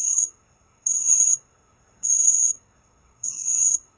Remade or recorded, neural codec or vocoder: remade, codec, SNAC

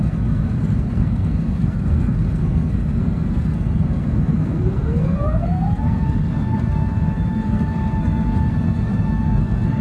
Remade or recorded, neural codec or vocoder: remade, codec, SNAC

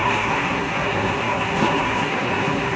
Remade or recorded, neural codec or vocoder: remade, codec, SNAC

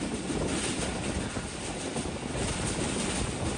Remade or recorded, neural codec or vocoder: recorded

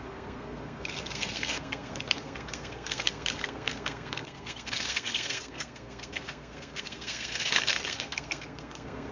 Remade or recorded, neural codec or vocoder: remade, codec, SNAC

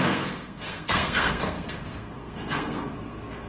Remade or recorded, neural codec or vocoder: remade, codec, SNAC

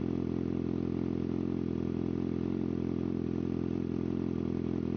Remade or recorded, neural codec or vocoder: recorded